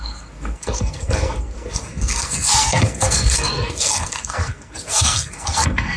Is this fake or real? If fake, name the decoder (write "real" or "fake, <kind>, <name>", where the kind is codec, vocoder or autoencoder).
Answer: fake, codec, SNAC